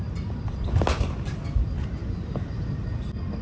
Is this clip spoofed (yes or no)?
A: no